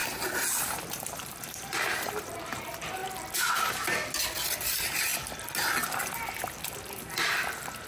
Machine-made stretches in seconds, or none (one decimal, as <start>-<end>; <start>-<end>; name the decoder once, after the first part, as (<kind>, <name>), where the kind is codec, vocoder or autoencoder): 0.0-2.3 (vocoder, BigVGAN v2)